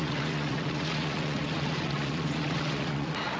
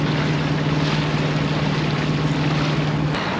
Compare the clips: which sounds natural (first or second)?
second